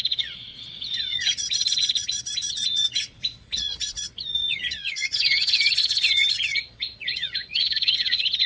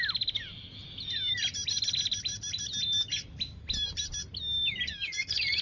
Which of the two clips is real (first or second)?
second